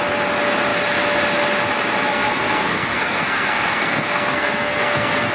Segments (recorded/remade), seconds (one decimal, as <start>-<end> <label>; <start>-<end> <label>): 0.0-2.1 recorded; 2.1-5.3 remade